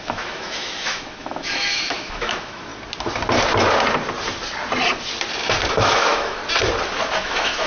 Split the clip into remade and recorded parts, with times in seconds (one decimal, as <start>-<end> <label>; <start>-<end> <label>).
0.0-2.7 remade; 2.7-5.7 recorded; 5.7-6.4 remade; 6.4-7.2 recorded; 7.2-7.7 remade